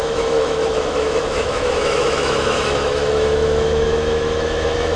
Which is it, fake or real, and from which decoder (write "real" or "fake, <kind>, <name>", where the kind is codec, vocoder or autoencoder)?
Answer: fake, autoencoder, DAC-VAE